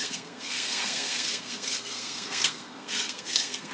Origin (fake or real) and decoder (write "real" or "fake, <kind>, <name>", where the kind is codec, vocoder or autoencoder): fake, codec, SNAC